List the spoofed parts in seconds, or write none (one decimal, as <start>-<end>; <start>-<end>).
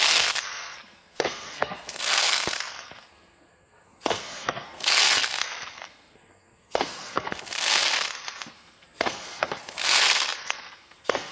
0.0-11.3